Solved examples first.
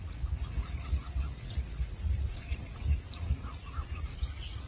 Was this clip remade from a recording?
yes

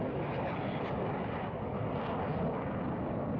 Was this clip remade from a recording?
no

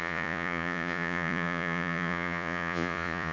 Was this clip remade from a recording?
yes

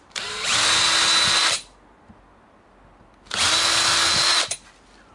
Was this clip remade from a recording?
no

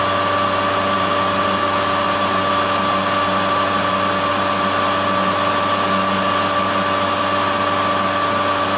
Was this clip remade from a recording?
no